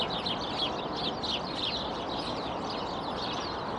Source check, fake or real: real